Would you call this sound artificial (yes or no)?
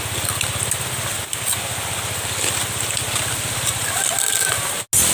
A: no